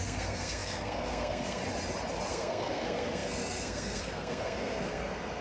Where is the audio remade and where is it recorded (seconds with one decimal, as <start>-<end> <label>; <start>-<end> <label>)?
0.0-1.6 remade; 1.6-2.3 recorded; 2.3-5.4 remade